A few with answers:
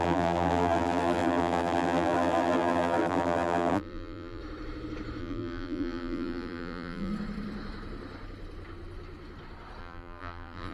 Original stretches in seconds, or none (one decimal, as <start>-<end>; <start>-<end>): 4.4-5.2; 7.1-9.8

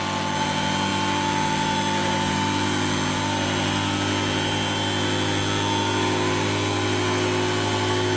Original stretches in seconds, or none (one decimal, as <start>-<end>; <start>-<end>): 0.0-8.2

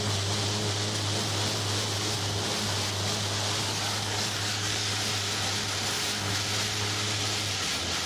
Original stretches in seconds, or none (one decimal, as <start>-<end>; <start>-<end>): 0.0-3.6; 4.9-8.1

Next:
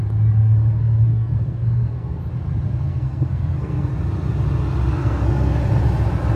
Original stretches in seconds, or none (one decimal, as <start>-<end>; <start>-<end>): 0.0-0.4; 2.2-2.9; 3.9-4.9; 5.5-6.4

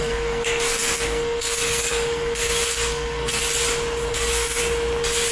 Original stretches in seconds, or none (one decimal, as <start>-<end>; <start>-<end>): 3.4-4.1; 4.6-5.3